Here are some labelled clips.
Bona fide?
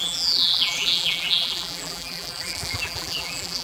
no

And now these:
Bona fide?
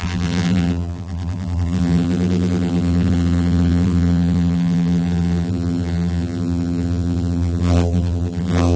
no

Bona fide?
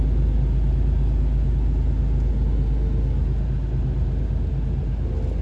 yes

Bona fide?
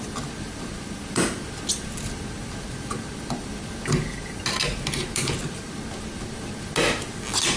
yes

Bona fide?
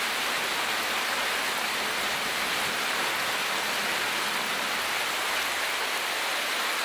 yes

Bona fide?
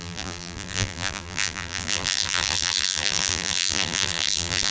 no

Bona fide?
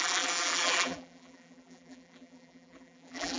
no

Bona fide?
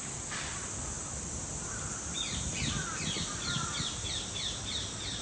yes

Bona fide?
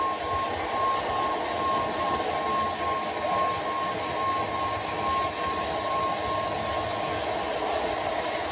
yes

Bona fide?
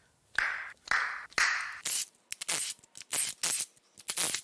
yes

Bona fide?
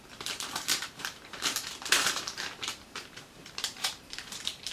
no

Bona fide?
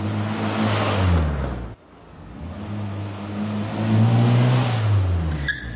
yes